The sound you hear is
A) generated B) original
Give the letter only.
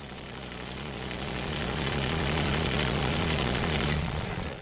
A